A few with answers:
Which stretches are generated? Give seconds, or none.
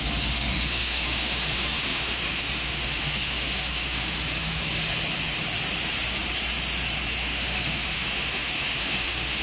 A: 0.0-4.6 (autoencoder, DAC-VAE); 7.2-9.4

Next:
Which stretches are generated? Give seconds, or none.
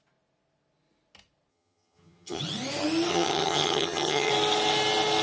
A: 1.5-2.4 (vocoder, HiFi-GAN); 3.1-4.3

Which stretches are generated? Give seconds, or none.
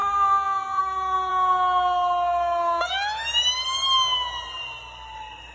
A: 0.0-0.8 (vocoder, BigVGAN v2)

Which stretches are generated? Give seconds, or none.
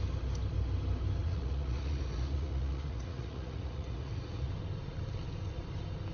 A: 1.2-4.5 (vocoder, Vocos)